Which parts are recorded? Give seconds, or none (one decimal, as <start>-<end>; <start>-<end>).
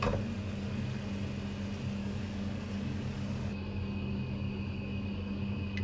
0.0-2.0